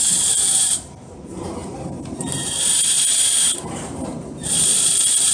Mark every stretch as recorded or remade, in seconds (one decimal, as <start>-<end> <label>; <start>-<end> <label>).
0.0-5.3 remade